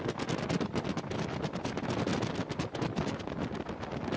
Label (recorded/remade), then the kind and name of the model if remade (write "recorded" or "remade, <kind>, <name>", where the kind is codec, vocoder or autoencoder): recorded